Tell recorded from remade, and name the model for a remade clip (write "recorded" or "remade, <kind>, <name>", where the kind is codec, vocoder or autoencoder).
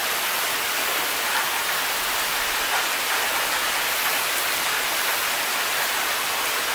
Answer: recorded